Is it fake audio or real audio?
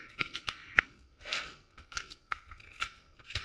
fake